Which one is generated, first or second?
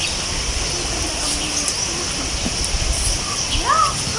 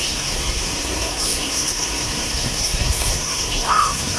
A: second